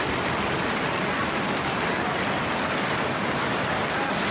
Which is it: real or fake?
real